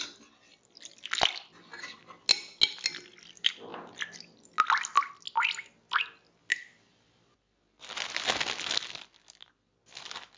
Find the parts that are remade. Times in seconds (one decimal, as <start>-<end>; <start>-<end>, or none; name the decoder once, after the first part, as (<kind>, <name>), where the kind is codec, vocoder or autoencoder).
none